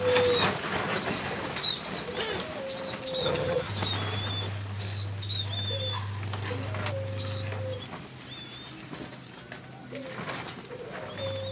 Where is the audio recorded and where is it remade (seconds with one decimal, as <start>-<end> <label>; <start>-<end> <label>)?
0.0-3.2 recorded; 3.2-3.7 remade; 3.7-11.5 recorded